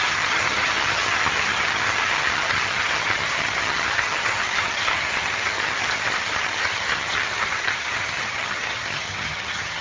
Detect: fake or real fake